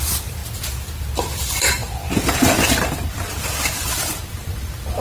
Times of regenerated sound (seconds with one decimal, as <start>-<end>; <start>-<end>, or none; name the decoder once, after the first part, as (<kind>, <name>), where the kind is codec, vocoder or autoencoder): 0.0-0.4 (vocoder, BigVGAN v2); 1.2-5.0